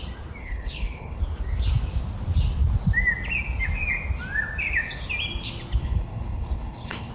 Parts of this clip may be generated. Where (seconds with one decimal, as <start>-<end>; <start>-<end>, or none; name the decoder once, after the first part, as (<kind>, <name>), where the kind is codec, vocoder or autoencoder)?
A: 0.4-1.2 (codec, HILCodec); 5.8-7.1